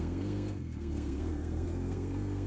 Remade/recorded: remade